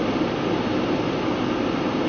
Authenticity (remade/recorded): recorded